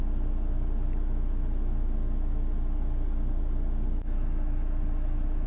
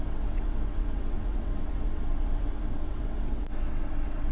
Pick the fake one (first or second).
second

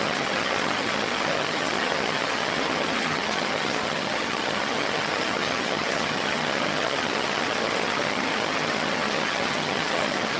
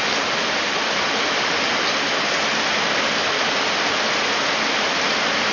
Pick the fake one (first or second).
first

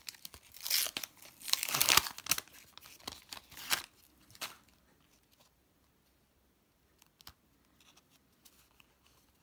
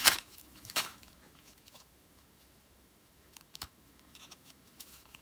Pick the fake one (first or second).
second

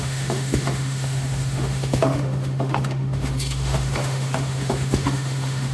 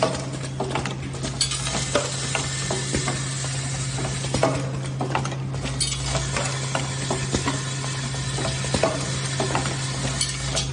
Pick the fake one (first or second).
first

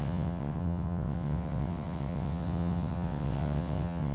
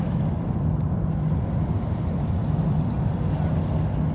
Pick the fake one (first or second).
first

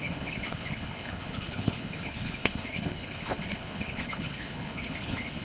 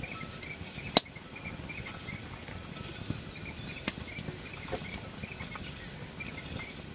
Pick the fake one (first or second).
first